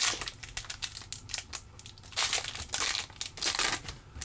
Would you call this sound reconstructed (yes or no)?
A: no